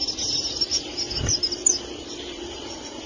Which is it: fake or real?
real